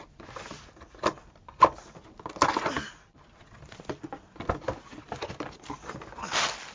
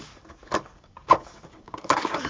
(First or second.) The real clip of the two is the first